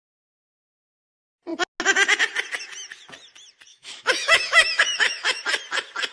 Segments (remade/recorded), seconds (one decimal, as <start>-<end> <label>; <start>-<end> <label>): 0.0-3.7 recorded; 3.7-5.4 remade; 5.4-6.1 recorded